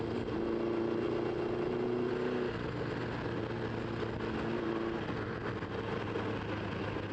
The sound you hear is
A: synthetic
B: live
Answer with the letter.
B